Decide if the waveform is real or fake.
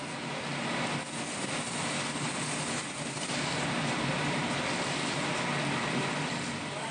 real